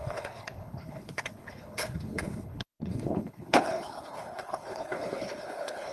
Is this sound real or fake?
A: fake